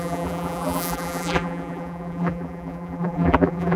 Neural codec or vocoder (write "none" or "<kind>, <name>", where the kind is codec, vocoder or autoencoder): vocoder, BigVGAN v2